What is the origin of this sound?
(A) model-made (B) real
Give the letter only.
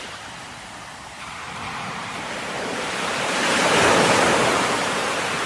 A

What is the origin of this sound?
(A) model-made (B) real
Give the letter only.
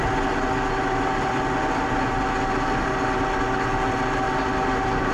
B